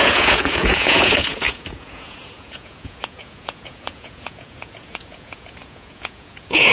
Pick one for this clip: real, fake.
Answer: fake